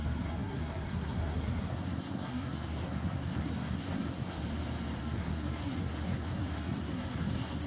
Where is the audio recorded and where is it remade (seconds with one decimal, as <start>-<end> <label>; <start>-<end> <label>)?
0.0-4.4 remade; 4.4-5.0 recorded; 5.0-7.7 remade